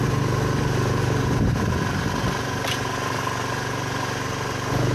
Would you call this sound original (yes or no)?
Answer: yes